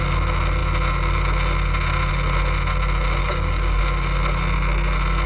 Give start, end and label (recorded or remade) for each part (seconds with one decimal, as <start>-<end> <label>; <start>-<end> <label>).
0.0-3.2 recorded; 3.2-3.8 remade; 3.8-5.3 recorded